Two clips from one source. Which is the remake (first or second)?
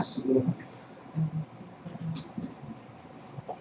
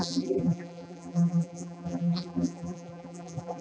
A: second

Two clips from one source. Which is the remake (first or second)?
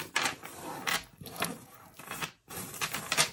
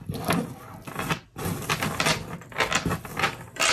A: first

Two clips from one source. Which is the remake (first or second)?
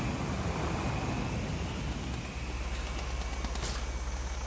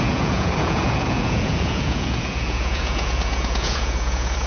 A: second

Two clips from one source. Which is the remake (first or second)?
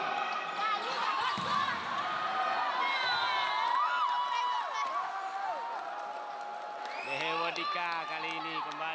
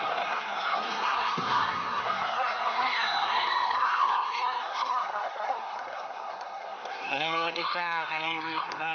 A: second